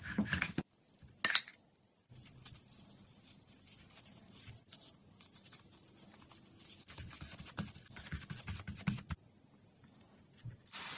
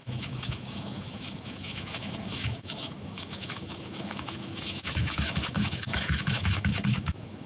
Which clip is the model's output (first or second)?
second